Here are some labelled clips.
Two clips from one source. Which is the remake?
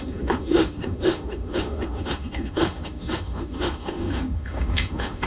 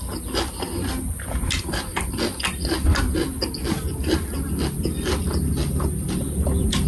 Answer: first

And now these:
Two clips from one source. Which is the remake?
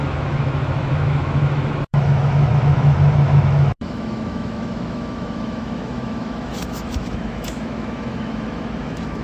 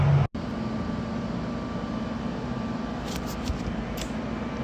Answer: first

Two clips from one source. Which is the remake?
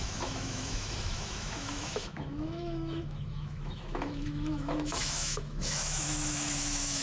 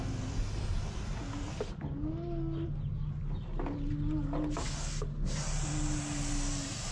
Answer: first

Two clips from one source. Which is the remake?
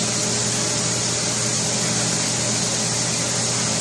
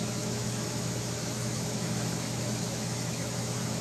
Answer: second